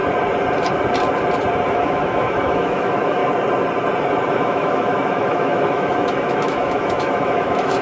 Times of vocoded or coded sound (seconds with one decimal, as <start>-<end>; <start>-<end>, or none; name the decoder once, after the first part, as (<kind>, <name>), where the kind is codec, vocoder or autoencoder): 1.7-3.2 (autoencoder, DAC-VAE); 4.3-7.8